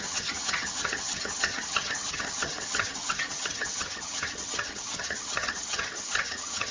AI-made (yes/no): yes